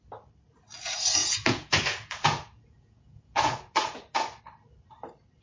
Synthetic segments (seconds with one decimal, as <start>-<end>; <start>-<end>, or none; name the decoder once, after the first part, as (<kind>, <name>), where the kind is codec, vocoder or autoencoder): 1.2-4.4 (vocoder, Vocos)